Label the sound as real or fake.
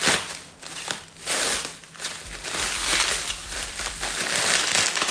real